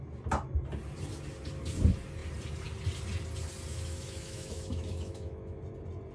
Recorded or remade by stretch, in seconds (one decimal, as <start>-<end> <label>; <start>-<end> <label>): 0.0-3.7 recorded; 3.7-5.6 remade; 5.6-6.1 recorded